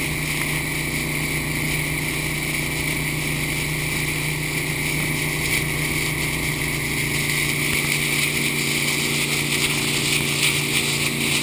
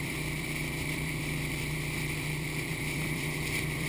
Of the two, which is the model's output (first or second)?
second